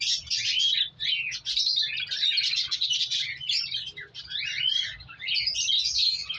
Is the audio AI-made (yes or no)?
no